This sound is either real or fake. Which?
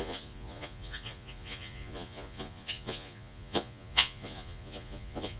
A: fake